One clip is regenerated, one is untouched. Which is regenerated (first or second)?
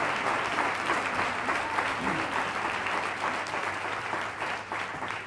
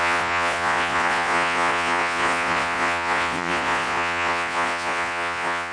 second